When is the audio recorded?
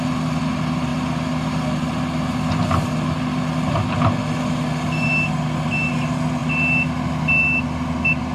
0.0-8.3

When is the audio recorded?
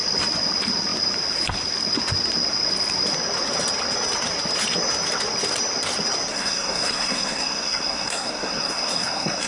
0.0-6.3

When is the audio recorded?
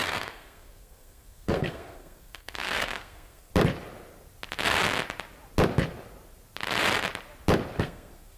3.5-7.8